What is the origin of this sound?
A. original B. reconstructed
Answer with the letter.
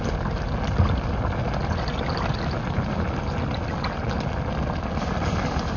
A